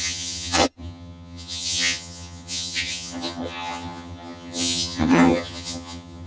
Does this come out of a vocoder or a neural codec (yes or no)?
yes